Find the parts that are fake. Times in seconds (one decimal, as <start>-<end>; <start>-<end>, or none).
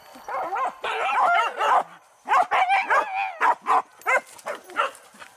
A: none